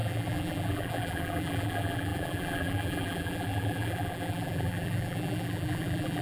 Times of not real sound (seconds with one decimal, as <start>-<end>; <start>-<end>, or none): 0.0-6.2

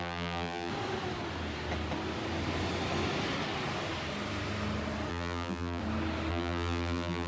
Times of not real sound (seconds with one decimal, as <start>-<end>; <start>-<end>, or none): 0.0-0.7; 5.1-5.8; 6.3-7.3

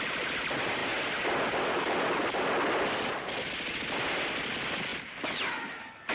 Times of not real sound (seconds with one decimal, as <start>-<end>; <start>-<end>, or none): 0.0-0.8; 4.5-6.1

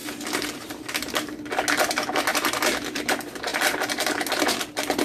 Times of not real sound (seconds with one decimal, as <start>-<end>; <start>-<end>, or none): 2.3-3.0; 3.5-4.2

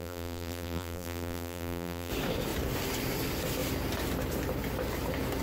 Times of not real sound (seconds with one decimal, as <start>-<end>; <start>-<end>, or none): 0.0-2.1

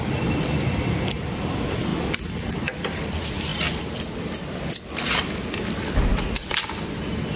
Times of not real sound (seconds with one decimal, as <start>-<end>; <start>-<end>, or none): 0.0-3.5; 4.7-7.4